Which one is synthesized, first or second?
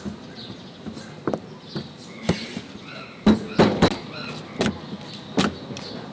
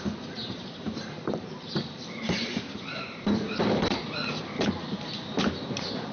second